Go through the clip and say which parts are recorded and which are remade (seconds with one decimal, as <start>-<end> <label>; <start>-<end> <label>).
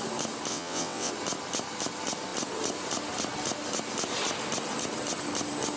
0.0-0.5 recorded; 0.5-1.1 remade; 1.1-5.8 recorded